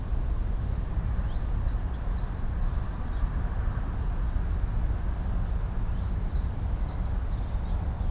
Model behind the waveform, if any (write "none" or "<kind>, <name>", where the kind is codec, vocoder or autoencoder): none